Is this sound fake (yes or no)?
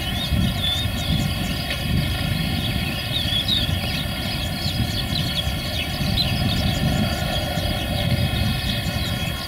no